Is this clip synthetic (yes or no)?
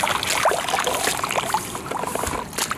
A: no